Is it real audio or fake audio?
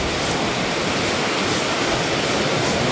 real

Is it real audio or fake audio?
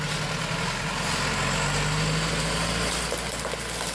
real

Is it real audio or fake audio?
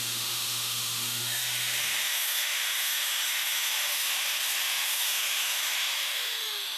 fake